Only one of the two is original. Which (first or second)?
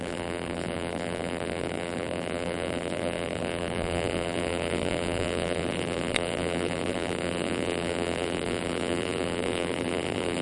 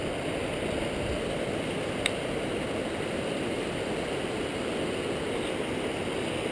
second